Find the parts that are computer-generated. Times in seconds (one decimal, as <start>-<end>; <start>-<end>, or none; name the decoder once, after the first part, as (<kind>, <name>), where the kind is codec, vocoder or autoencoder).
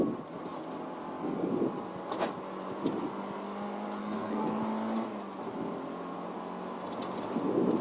4.0-4.6 (codec, SNAC)